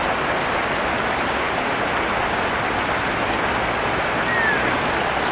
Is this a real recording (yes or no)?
yes